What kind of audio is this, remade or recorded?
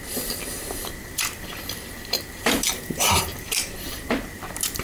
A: remade